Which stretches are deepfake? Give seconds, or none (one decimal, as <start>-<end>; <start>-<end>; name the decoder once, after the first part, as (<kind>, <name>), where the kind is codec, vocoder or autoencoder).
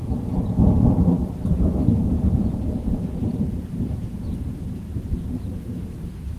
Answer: 0.0-1.2 (vocoder, Vocos); 2.0-6.4